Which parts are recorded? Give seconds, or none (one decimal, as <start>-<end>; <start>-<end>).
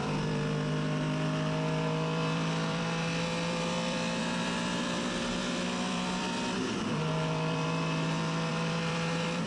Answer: none